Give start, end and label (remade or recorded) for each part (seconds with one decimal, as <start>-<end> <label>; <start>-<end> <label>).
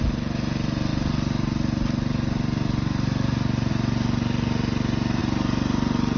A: 0.0-6.2 recorded